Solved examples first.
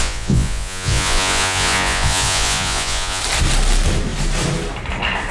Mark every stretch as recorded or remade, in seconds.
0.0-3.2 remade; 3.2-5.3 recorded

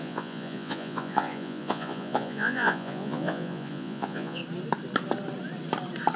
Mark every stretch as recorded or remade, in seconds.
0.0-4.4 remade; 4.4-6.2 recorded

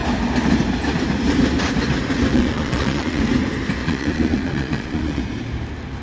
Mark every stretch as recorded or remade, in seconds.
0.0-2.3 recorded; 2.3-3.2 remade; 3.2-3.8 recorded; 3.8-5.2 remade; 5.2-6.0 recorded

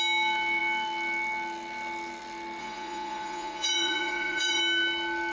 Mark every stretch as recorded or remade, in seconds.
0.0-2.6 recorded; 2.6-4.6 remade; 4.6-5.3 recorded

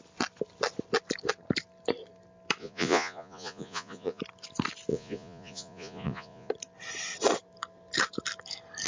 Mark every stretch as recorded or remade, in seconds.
0.0-2.6 recorded; 2.6-4.2 remade; 4.2-4.9 recorded; 4.9-6.5 remade; 6.5-8.9 recorded

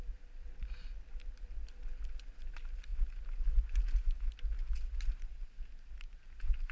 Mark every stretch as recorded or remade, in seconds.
0.0-6.7 recorded

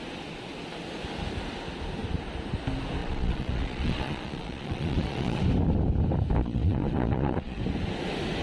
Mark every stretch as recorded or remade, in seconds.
0.0-3.0 recorded; 3.0-5.4 remade; 5.4-6.4 recorded; 6.4-7.6 remade; 7.6-8.4 recorded

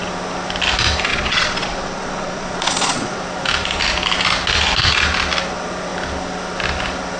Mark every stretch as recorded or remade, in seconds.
0.0-1.1 recorded; 1.1-3.2 remade; 3.2-7.2 recorded